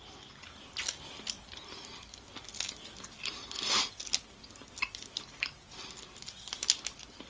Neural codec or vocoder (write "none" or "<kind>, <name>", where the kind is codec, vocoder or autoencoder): none